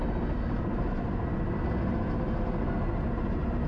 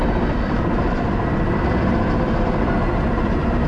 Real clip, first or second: first